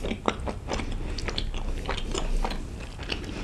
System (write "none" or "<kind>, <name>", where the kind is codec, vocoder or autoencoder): none